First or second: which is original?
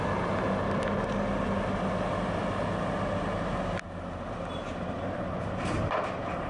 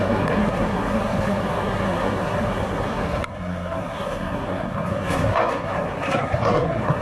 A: first